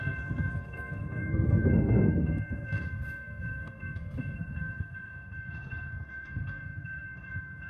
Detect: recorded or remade remade